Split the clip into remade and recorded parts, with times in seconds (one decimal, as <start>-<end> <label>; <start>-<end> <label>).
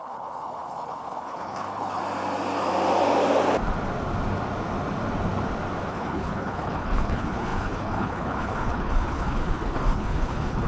0.0-2.0 remade; 2.0-5.9 recorded; 5.9-10.7 remade